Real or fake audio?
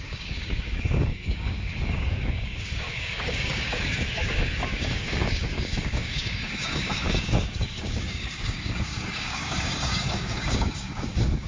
fake